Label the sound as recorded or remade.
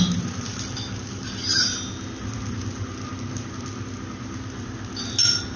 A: recorded